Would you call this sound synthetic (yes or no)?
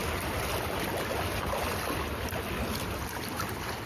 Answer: no